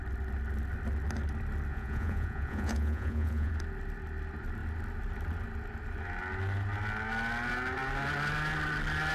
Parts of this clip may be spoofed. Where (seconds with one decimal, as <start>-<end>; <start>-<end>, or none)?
1.7-3.5